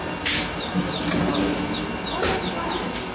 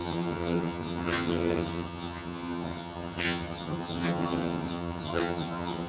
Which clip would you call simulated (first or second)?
second